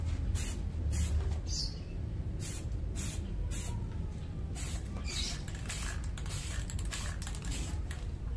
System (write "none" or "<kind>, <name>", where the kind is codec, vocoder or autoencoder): none